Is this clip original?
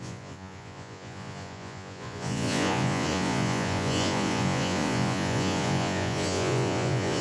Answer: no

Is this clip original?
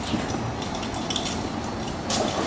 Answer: yes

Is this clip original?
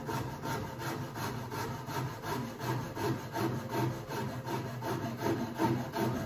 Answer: yes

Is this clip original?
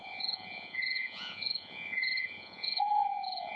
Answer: no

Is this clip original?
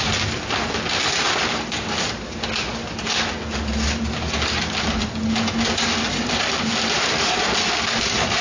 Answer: yes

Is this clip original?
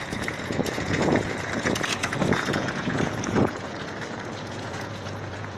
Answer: no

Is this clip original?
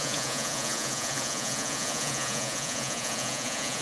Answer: no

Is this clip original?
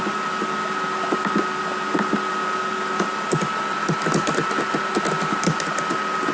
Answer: yes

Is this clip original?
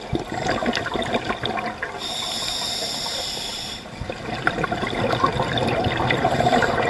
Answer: yes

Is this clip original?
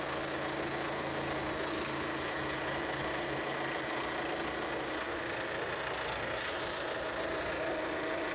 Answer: yes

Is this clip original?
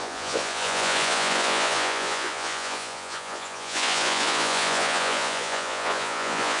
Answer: no